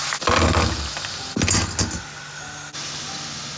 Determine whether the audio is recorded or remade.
recorded